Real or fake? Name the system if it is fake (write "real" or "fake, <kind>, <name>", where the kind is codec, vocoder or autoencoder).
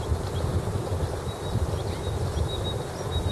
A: real